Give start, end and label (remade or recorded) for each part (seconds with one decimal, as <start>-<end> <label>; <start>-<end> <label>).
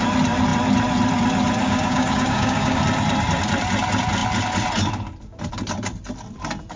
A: 0.0-1.6 recorded; 1.6-2.8 remade; 2.8-6.8 recorded